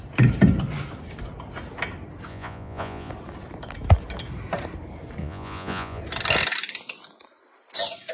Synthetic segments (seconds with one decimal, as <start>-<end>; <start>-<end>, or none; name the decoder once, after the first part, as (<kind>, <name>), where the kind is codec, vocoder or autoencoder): 2.3-3.1 (vocoder, Vocos); 5.2-6.0